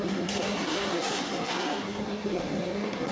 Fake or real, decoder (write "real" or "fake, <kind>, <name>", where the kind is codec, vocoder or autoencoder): fake, codec, SNAC